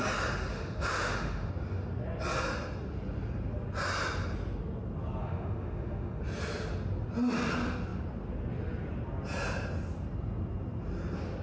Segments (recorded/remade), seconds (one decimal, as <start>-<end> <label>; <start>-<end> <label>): 0.0-0.5 recorded; 0.5-1.5 remade; 1.5-5.2 recorded; 5.2-6.2 remade; 6.2-11.4 recorded

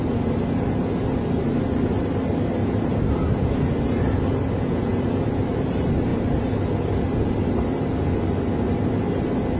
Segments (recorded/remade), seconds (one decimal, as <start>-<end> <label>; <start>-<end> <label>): 0.0-2.6 recorded; 2.6-3.3 remade; 3.3-4.9 recorded; 4.9-5.5 remade; 5.5-9.6 recorded

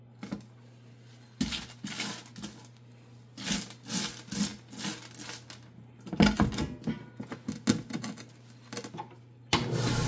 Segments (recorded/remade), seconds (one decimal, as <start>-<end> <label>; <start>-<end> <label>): 0.0-10.1 recorded

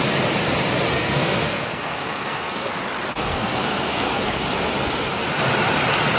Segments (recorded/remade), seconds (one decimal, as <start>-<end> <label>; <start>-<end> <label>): 0.0-0.9 recorded; 0.9-2.7 remade; 2.7-3.1 recorded; 3.1-4.5 remade; 4.5-6.2 recorded

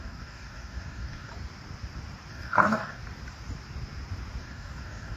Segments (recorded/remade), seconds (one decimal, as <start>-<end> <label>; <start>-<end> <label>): 0.0-1.3 remade; 1.3-2.3 recorded; 2.3-3.0 remade; 3.0-4.4 recorded; 4.4-5.2 remade

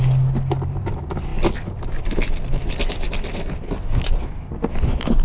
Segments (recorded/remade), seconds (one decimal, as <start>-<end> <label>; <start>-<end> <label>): 0.0-5.2 recorded